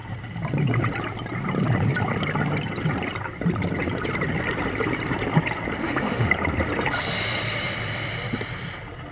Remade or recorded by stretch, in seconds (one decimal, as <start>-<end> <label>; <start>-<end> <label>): 0.0-5.8 recorded; 5.8-6.3 remade; 6.3-9.1 recorded